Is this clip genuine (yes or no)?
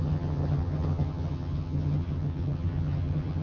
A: no